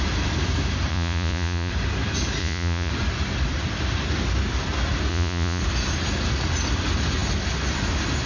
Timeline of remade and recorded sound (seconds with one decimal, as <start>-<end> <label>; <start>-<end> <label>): 0.0-0.9 recorded; 0.9-1.7 remade; 1.7-2.4 recorded; 2.4-2.9 remade; 2.9-5.1 recorded; 5.1-5.6 remade; 5.6-8.3 recorded